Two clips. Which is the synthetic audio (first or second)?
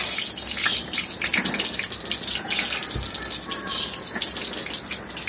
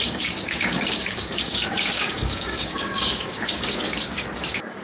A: second